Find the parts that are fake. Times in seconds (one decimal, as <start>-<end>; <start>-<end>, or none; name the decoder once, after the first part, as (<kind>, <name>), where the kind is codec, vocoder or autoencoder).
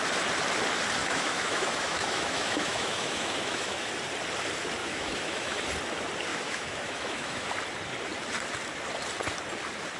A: 1.0-3.9 (autoencoder, DAC-VAE); 4.8-5.6; 6.3-7.5